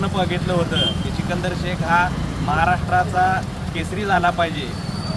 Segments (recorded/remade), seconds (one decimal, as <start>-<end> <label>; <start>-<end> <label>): 0.0-1.8 recorded; 1.8-4.6 remade; 4.6-5.2 recorded